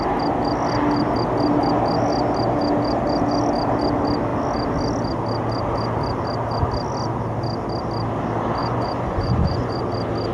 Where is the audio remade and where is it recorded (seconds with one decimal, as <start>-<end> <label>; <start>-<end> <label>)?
0.0-8.6 recorded; 8.6-9.8 remade; 9.8-10.3 recorded